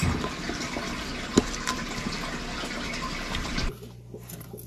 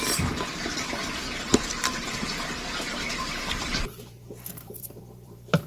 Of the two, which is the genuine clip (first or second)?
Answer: first